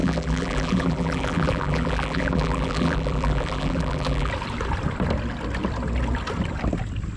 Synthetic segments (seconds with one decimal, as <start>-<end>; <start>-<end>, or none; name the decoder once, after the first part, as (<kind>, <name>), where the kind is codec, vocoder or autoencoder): 0.0-4.3 (vocoder, BigVGAN v2)